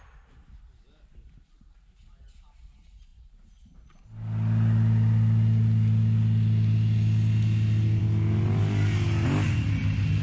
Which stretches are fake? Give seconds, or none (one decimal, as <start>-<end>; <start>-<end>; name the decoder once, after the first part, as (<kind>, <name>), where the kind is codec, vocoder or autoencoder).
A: none